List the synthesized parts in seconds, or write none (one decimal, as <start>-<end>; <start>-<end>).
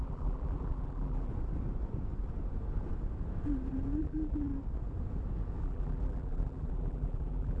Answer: 0.0-1.3; 4.0-4.5; 5.6-7.6